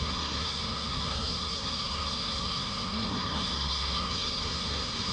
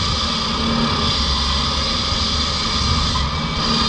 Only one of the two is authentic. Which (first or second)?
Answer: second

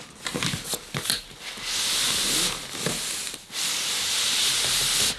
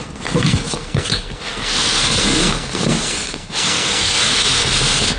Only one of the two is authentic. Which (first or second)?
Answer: first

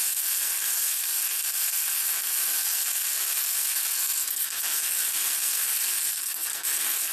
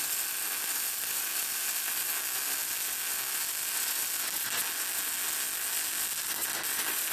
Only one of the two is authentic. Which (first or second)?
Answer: second